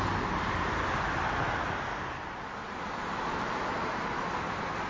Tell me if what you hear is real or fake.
real